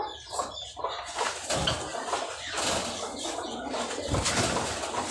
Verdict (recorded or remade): recorded